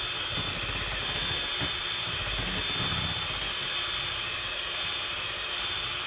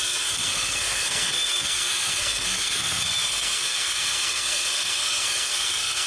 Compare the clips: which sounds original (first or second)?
first